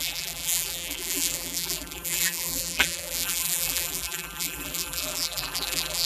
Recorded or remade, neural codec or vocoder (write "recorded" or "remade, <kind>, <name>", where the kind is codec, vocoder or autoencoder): remade, vocoder, BigVGAN v2